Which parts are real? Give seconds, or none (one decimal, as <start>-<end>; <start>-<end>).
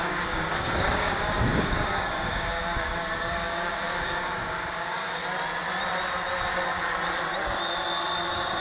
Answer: 5.2-8.6